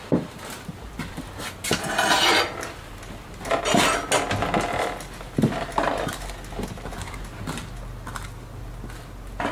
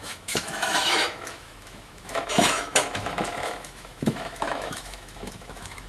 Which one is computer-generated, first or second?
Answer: second